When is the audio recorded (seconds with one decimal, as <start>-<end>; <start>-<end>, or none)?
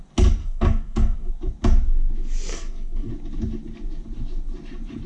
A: 0.0-0.4; 1.3-2.5; 3.1-5.1